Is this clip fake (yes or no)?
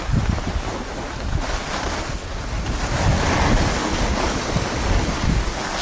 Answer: no